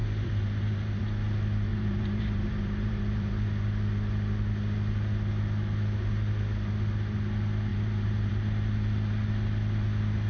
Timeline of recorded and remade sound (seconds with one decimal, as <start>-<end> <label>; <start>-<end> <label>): 0.0-1.0 remade; 1.0-1.7 recorded; 1.7-3.3 remade; 3.3-7.7 recorded; 7.7-8.3 remade; 8.3-10.3 recorded